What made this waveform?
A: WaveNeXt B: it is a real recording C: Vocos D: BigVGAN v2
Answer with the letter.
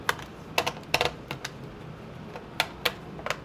B